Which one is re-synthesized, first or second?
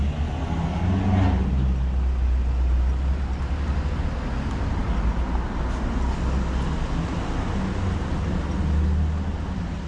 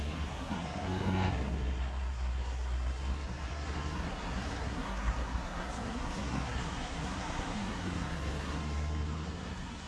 second